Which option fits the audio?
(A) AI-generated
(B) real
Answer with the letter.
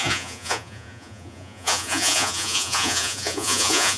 A